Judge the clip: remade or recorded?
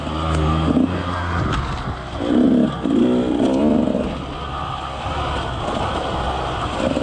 recorded